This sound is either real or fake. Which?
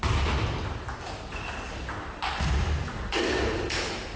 real